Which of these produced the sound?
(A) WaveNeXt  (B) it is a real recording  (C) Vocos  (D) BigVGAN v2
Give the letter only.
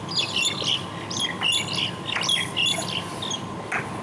B